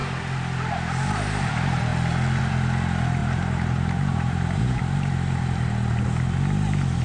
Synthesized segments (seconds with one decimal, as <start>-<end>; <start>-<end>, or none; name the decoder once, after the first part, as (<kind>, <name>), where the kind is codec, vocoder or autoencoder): 3.2-4.8 (vocoder, BigVGAN v2)